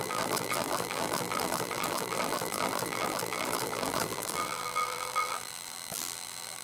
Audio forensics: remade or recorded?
remade